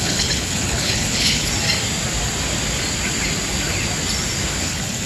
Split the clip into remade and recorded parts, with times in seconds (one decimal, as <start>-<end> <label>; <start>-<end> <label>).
0.0-1.5 remade; 1.5-4.6 recorded; 4.6-5.1 remade